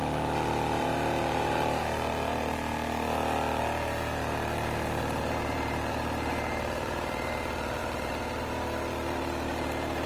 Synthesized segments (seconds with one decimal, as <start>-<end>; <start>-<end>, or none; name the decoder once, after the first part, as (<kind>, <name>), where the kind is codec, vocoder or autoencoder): 0.0-2.7 (vocoder, BigVGAN v2); 3.6-10.1